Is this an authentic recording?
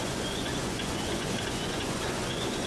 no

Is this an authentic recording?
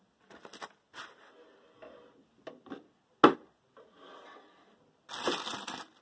yes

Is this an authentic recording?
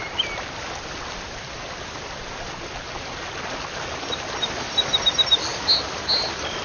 yes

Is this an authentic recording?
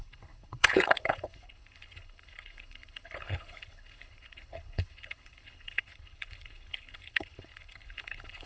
no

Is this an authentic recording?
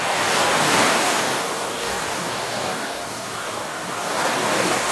no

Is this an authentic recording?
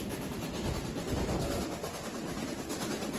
yes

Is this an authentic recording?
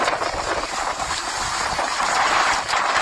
yes